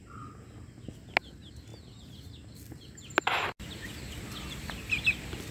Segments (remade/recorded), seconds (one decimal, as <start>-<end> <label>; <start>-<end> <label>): 0.0-5.5 recorded